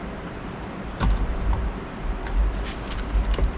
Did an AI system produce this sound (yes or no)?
yes